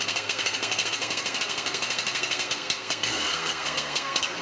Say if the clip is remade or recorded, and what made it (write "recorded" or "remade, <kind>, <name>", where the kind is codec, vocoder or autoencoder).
remade, codec, SNAC